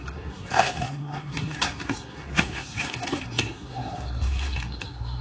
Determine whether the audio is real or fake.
fake